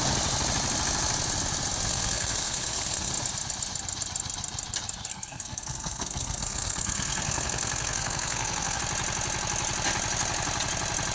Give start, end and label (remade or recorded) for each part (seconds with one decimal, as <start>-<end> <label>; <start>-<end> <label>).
0.0-1.9 recorded; 1.9-3.1 remade; 3.1-5.1 recorded; 5.1-8.8 remade; 8.8-11.1 recorded